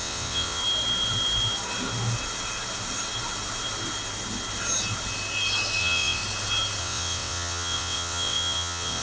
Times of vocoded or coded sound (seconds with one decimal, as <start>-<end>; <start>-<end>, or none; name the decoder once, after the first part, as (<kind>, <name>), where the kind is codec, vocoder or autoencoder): 0.0-0.6 (vocoder, WaveNeXt); 5.8-6.2; 6.8-9.0